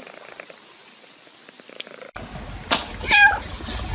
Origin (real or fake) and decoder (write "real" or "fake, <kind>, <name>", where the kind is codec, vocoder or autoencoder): real